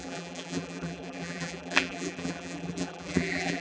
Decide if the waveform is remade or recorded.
remade